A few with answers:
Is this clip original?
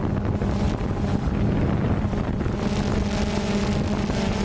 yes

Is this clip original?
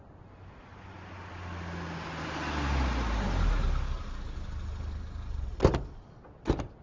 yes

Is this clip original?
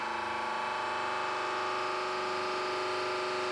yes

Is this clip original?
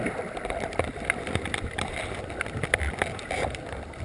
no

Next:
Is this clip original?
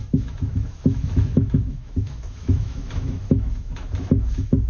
no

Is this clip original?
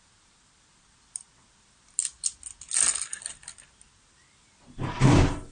yes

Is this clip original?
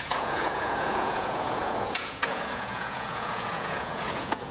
no